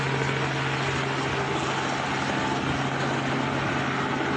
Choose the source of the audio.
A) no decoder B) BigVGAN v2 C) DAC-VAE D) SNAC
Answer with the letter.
A